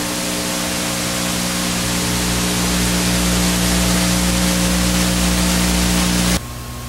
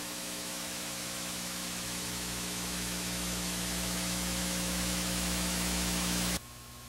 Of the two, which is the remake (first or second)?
second